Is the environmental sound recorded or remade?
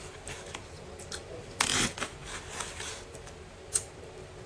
recorded